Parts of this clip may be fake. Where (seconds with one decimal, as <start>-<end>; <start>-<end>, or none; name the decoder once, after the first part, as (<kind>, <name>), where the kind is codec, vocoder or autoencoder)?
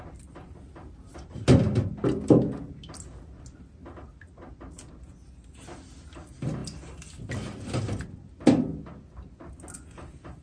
none